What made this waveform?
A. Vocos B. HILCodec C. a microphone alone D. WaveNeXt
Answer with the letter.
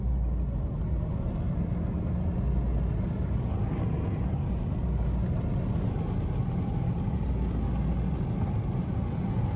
C